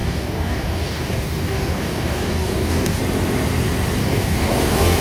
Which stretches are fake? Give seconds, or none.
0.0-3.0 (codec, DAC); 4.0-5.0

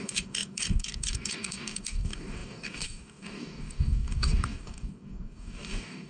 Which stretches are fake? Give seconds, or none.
0.0-6.1 (codec, DAC)

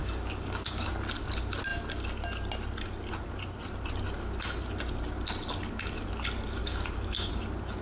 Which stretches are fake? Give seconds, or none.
0.0-0.9 (codec, DAC); 6.6-7.3